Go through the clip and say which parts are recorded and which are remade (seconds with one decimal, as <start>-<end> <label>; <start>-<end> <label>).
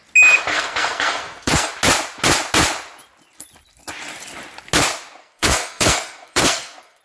0.0-0.5 recorded; 0.5-1.7 remade; 1.7-5.2 recorded; 5.2-7.0 remade